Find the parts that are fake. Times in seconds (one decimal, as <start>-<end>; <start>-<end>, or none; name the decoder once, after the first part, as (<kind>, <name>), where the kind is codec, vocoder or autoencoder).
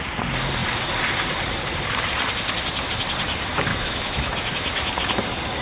3.7-4.9 (autoencoder, DAC-VAE)